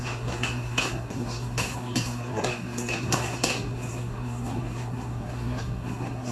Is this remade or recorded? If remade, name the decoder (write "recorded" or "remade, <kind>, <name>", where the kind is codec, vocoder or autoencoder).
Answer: remade, codec, SNAC